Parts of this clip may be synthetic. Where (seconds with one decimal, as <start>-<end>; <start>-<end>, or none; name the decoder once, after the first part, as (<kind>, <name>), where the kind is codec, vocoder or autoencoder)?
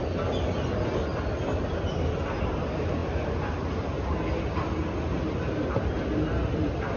none